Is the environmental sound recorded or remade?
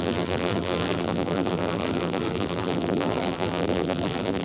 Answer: remade